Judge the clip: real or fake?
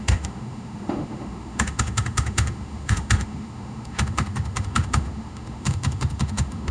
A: fake